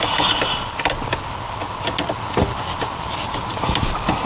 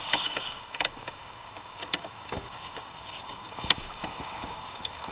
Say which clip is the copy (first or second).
second